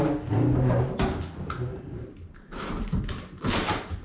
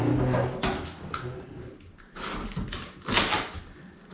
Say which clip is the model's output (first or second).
first